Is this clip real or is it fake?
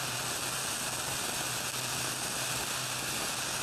real